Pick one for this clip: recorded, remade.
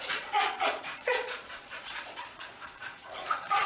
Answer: remade